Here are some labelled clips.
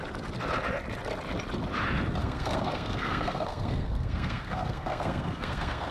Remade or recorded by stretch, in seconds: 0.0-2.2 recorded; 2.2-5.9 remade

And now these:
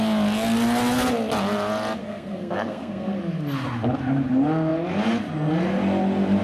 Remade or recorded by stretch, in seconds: 0.0-2.0 recorded; 2.0-3.2 remade; 3.2-6.4 recorded

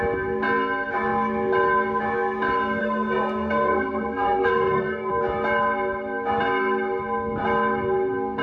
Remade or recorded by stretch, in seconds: 0.0-2.8 recorded; 2.8-5.1 remade; 5.1-8.4 recorded

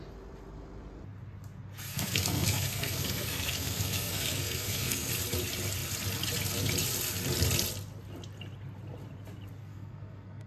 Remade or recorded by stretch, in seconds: 0.0-1.9 recorded; 1.9-5.1 remade; 5.1-9.6 recorded; 9.6-10.5 remade

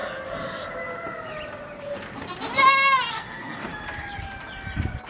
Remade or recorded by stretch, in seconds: 0.0-3.1 recorded; 3.1-3.7 remade; 3.7-5.1 recorded

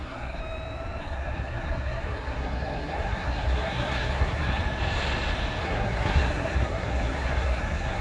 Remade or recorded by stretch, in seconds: 0.0-0.4 remade; 0.4-1.0 recorded; 1.0-4.6 remade; 4.6-5.6 recorded; 5.6-8.0 remade